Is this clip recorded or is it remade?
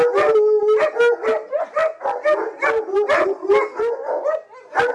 recorded